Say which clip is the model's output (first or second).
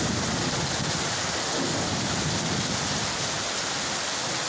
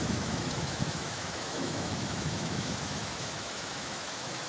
second